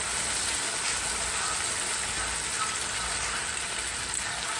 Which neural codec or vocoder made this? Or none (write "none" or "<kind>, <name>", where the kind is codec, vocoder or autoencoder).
none